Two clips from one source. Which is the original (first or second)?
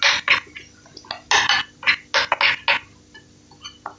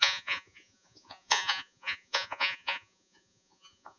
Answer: first